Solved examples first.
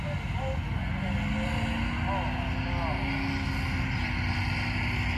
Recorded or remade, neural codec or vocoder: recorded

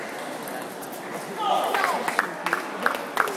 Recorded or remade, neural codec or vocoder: recorded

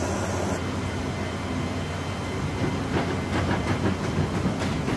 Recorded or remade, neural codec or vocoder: recorded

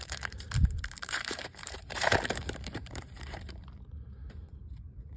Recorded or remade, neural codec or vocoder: remade, vocoder, BigVGAN v2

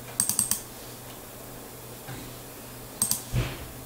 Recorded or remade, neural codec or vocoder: recorded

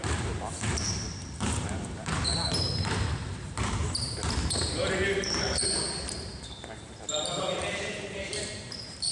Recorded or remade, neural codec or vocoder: remade, vocoder, BigVGAN v2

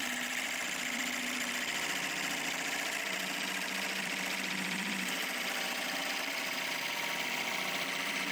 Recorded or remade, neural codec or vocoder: remade, vocoder, BigVGAN v2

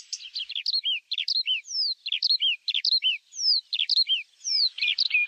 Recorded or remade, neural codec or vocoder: remade, vocoder, BigVGAN v2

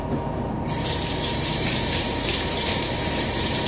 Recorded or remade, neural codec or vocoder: remade, vocoder, BigVGAN v2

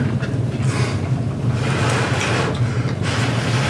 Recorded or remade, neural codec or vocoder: recorded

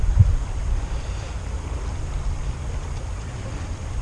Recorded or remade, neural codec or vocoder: recorded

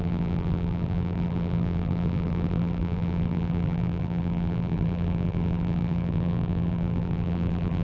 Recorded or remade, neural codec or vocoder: remade, vocoder, BigVGAN v2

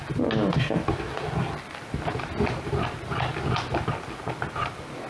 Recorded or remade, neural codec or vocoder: recorded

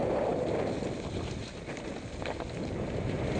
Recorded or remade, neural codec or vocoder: recorded